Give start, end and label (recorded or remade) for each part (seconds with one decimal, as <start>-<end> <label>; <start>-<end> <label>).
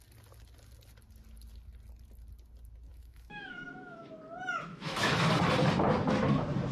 0.0-2.9 recorded; 2.9-4.1 remade; 4.1-4.7 recorded; 4.7-5.3 remade; 5.3-6.7 recorded